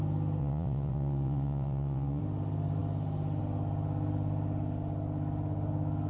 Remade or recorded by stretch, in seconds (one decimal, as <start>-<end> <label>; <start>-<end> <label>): 0.0-0.4 recorded; 0.4-2.2 remade; 2.2-6.1 recorded